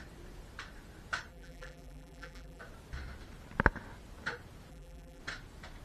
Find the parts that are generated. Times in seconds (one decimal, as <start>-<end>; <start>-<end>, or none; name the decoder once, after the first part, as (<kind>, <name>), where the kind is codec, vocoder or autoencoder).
1.3-2.6 (vocoder, BigVGAN v2); 4.7-5.2